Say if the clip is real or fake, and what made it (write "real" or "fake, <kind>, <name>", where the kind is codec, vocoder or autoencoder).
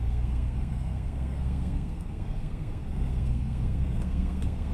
fake, codec, SNAC